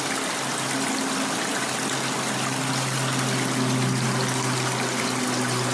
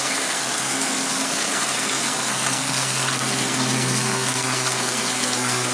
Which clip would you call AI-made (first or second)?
second